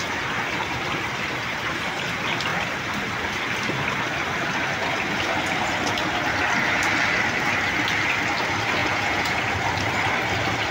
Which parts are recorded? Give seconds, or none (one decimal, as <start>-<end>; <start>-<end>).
0.0-8.8; 9.4-10.7